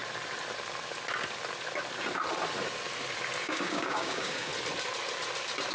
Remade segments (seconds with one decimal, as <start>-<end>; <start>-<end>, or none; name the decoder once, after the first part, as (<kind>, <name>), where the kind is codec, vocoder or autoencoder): 3.4-4.5 (codec, DAC)